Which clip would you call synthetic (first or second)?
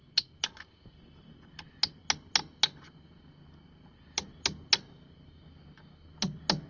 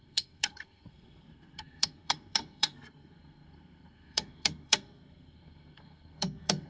second